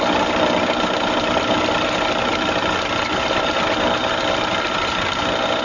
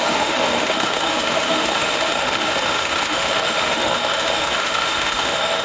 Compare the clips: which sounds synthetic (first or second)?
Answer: second